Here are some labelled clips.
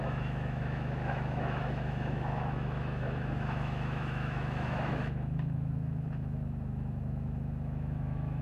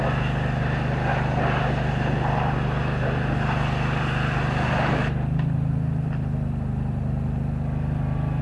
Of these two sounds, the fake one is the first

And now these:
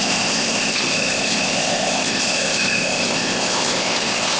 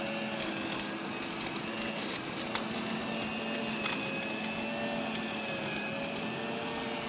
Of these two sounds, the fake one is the first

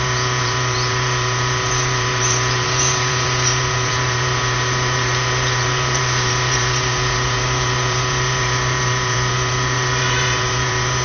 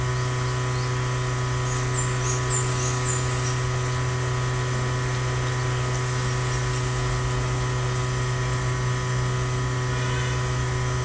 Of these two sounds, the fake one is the first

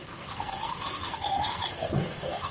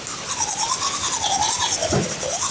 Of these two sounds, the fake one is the first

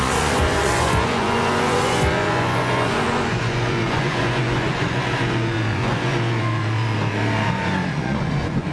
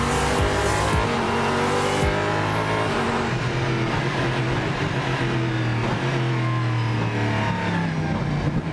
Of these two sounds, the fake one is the first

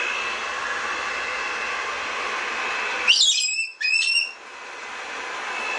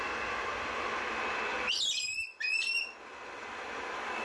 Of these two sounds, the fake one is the second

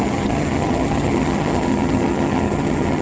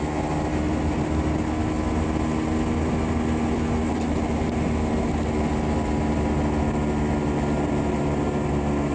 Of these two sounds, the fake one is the first